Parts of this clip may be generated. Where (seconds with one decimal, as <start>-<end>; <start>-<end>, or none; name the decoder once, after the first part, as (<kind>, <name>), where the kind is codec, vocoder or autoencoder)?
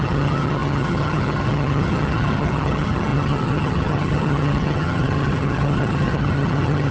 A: 0.0-6.9 (vocoder, HiFi-GAN)